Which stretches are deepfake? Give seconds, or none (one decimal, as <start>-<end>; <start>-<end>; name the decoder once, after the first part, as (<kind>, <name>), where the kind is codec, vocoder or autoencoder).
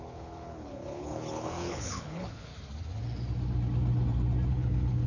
0.0-2.5 (codec, HILCodec); 4.5-5.1